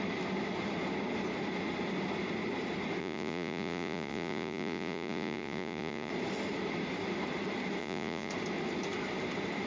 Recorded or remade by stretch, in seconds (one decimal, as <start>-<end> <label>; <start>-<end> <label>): 0.0-3.0 recorded; 3.0-6.1 remade; 6.1-7.8 recorded; 7.8-8.3 remade; 8.3-9.7 recorded